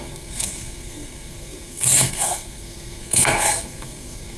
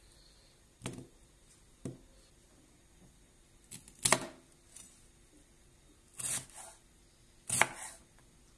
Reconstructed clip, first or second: first